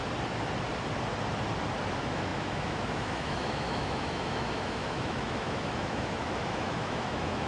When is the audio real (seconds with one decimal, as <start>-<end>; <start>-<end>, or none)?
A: 0.0-1.9